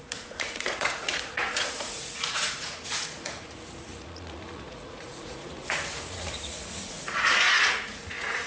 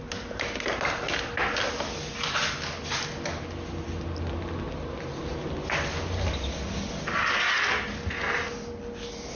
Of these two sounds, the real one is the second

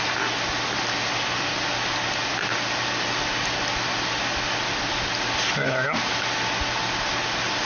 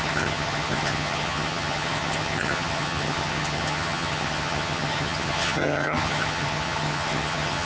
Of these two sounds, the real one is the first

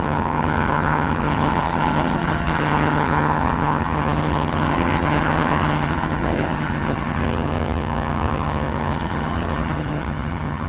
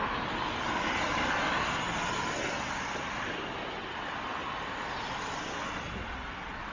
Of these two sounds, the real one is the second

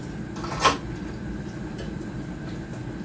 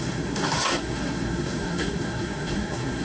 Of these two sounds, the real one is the first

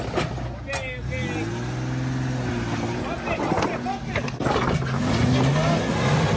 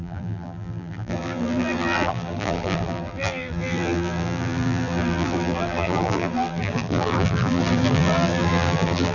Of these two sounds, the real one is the first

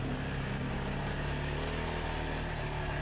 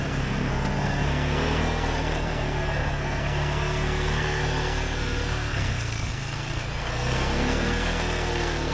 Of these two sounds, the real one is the first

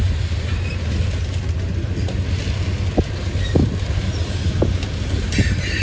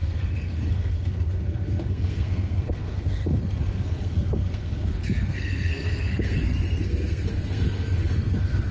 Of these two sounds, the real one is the first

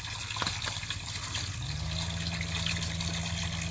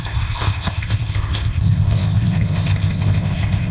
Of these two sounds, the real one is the first